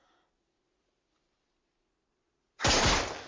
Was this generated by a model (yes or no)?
no